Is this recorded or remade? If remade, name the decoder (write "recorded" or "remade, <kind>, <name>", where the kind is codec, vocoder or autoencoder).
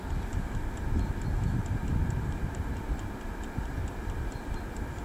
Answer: recorded